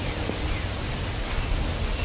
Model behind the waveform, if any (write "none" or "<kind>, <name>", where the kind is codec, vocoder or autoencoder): none